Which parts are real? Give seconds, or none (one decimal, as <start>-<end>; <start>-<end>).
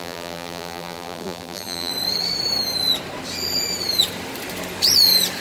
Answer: 1.9-5.4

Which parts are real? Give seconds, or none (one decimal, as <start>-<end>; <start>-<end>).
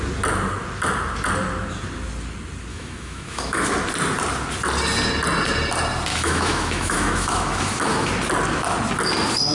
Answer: 0.0-2.7; 3.6-6.1; 8.1-9.5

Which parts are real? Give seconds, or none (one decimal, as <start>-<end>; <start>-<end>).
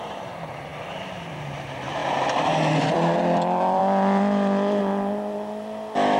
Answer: 3.8-4.8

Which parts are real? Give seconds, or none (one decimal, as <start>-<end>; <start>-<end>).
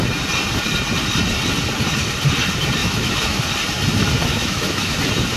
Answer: 0.0-2.8; 3.4-4.3; 5.0-5.4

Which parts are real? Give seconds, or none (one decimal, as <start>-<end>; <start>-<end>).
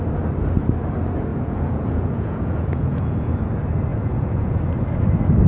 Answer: 0.0-1.3; 3.3-3.9; 4.6-5.5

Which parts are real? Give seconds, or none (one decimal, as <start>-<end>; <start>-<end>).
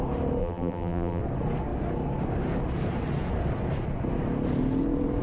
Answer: 0.0-0.4; 1.2-5.2